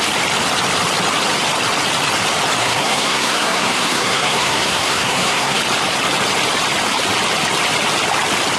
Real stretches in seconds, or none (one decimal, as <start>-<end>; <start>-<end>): 0.0-2.6; 5.6-8.6